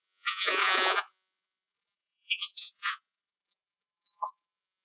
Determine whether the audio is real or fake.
fake